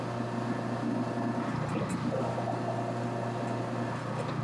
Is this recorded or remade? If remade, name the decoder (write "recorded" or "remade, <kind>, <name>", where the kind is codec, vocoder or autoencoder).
recorded